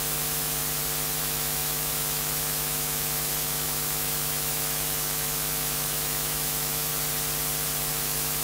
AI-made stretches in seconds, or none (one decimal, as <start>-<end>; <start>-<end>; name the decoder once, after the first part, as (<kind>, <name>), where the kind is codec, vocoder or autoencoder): 0.0-0.6 (autoencoder, DAC-VAE); 1.2-6.9; 7.9-8.4